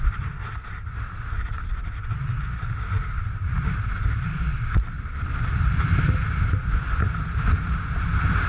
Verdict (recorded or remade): recorded